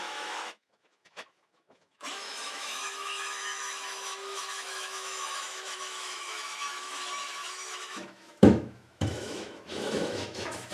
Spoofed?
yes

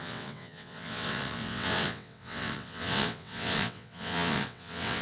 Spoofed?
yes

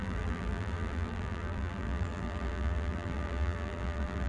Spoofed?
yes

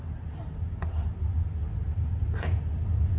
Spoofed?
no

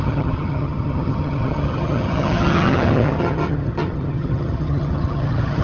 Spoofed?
yes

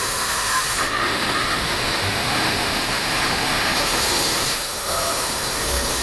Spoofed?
yes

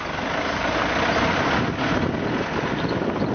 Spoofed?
no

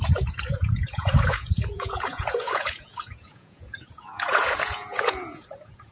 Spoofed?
yes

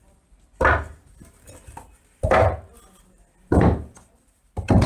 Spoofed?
no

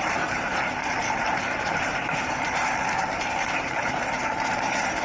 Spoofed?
yes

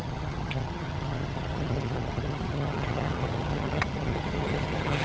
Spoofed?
yes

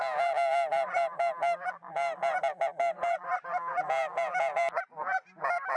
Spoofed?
no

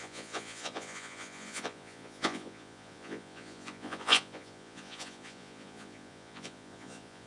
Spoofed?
yes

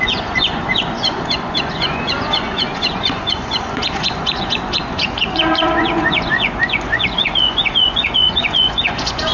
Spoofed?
yes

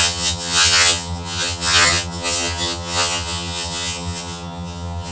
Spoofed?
yes